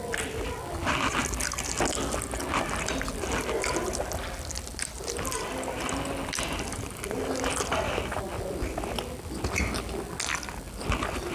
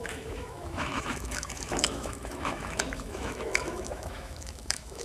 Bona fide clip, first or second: first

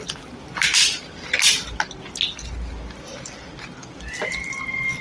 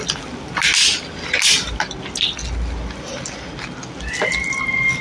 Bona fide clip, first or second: second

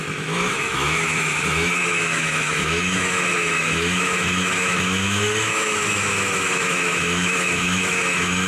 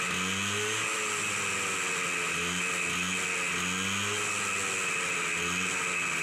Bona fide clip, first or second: second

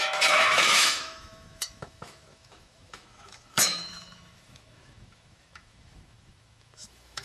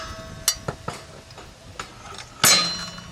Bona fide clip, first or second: second